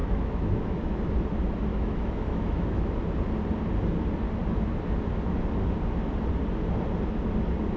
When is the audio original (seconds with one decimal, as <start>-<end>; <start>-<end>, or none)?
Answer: 1.0-1.7; 2.9-7.8